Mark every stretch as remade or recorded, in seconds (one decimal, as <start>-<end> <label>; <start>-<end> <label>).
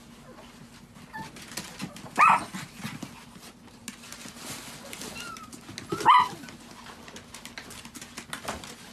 0.0-1.8 recorded; 1.8-2.7 remade; 2.7-8.9 recorded